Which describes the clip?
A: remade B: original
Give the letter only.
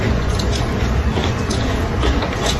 A